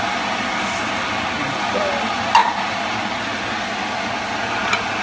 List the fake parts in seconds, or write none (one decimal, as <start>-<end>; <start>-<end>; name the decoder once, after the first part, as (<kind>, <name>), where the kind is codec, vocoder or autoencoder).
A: none